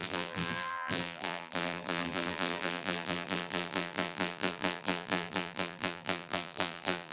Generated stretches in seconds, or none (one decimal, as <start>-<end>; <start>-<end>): 0.0-7.1